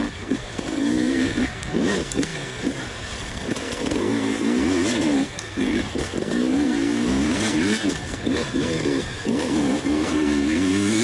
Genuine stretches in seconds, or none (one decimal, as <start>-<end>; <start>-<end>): none

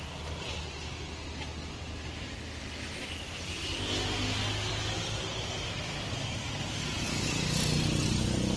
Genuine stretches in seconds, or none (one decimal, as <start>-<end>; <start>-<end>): 0.0-8.6